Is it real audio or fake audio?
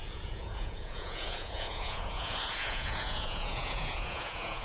fake